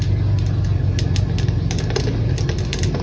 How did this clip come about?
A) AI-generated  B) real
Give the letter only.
B